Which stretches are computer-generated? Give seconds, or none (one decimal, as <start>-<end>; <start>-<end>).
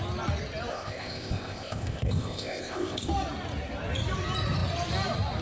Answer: 0.7-3.1